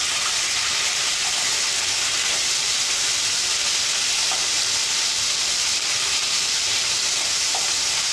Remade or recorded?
recorded